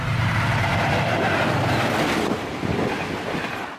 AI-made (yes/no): no